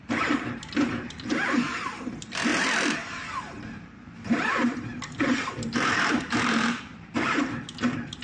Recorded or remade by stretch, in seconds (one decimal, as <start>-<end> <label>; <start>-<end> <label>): 0.0-8.2 remade